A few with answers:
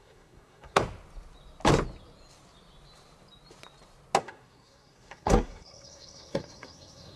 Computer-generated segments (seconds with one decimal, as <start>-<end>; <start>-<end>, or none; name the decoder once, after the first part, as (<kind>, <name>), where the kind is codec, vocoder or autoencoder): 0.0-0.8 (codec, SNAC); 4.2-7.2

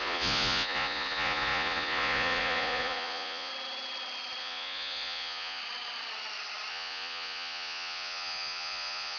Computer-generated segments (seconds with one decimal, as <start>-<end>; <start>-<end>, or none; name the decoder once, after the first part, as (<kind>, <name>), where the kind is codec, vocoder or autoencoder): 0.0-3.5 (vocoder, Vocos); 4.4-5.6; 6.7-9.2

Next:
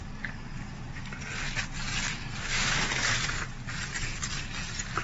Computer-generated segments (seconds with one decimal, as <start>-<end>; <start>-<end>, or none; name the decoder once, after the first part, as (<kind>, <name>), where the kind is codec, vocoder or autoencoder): 2.4-2.9 (codec, DAC)

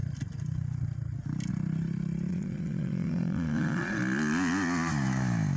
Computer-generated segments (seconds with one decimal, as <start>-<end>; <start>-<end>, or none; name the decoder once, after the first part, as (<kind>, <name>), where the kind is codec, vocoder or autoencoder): 2.3-4.0 (vocoder, Vocos)

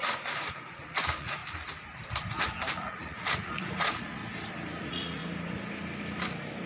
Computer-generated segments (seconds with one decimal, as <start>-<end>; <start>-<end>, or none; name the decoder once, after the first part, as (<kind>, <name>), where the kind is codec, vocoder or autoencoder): 0.0-1.4 (vocoder, Vocos); 2.7-4.2; 4.8-5.2

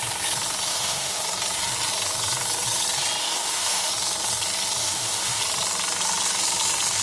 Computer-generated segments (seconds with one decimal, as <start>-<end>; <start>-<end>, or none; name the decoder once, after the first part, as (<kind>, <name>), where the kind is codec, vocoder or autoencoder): 0.7-1.2 (autoencoder, DAC-VAE); 3.2-3.9; 4.8-5.4